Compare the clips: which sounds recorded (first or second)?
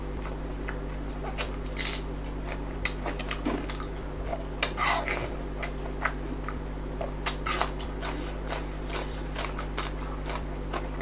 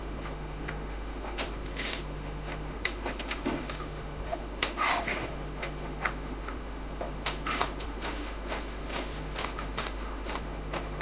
first